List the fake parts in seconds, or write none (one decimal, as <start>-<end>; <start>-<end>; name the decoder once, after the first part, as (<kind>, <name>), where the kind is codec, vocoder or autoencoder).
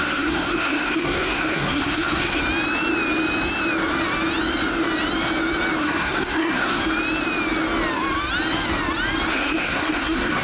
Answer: 0.0-2.4 (codec, SNAC); 5.8-6.8; 9.3-10.4